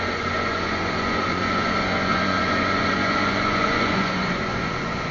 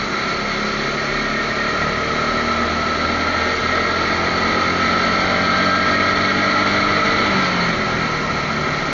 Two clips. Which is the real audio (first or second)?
second